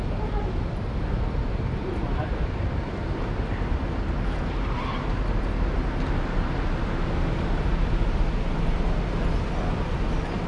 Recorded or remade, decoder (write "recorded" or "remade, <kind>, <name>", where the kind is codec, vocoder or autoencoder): recorded